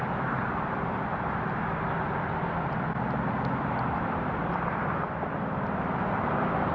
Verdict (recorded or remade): remade